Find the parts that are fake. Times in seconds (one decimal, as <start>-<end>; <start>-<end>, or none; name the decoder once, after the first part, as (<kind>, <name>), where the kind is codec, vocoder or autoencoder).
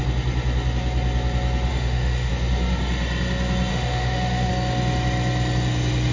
1.7-2.3 (autoencoder, DAC-VAE); 3.7-4.5